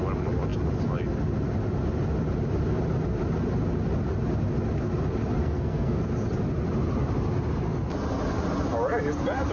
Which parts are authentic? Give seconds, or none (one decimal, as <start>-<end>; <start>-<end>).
0.0-5.4; 6.0-9.5